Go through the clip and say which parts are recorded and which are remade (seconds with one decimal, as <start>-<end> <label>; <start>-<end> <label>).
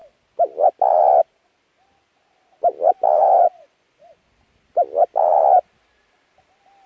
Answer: 0.0-3.2 recorded; 3.2-4.3 remade; 4.3-6.9 recorded